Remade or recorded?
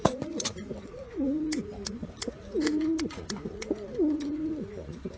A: remade